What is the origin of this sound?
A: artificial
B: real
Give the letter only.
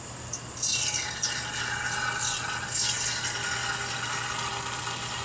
B